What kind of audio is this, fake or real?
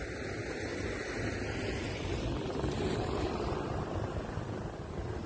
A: real